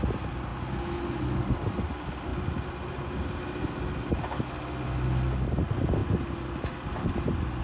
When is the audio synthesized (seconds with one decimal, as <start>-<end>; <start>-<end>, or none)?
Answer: none